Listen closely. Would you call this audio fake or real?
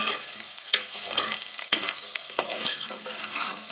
fake